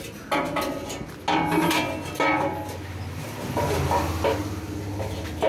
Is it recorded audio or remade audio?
recorded